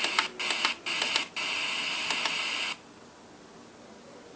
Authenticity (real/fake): real